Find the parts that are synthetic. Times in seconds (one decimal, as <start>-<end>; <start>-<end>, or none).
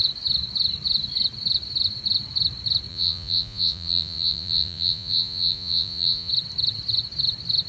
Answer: 2.9-6.3